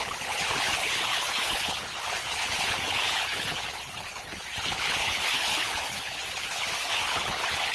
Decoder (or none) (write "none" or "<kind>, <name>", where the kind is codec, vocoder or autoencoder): codec, HILCodec